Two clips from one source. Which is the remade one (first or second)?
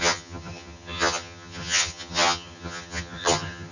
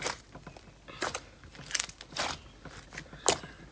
first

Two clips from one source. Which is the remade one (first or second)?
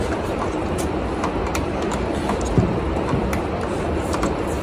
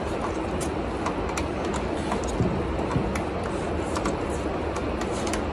first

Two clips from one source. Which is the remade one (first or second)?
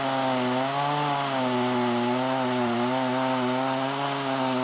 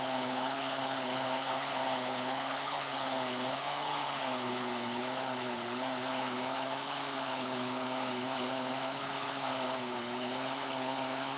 second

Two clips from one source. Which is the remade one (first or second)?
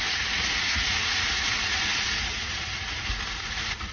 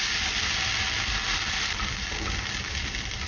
first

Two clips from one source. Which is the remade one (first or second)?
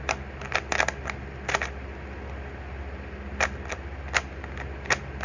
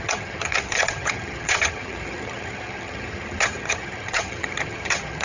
second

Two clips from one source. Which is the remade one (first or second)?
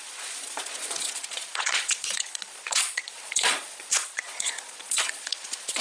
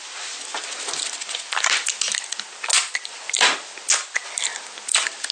first